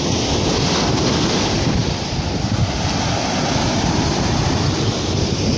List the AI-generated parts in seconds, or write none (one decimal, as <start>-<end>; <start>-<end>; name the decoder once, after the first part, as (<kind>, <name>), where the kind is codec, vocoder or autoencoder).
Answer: none